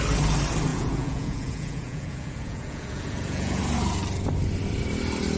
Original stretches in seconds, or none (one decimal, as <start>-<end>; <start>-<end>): 0.0-0.7; 3.6-5.4